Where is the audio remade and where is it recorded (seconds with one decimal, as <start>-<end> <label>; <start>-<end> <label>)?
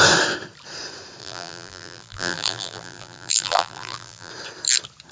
0.0-1.2 recorded; 1.2-4.3 remade; 4.3-5.1 recorded